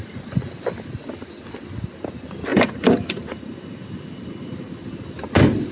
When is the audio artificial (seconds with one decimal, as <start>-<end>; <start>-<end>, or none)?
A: 2.5-4.5